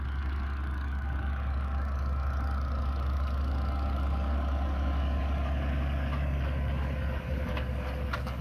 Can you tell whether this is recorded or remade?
remade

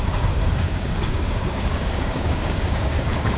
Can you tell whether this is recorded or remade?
remade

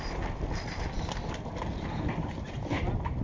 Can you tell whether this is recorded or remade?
recorded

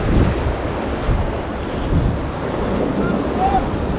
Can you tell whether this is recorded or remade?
recorded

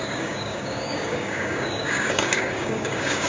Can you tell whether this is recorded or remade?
remade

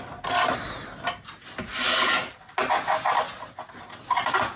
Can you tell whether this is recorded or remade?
recorded